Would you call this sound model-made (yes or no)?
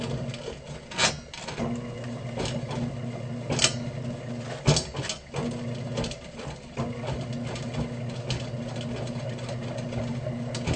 no